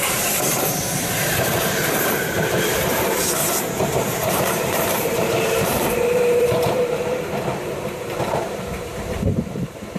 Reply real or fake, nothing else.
fake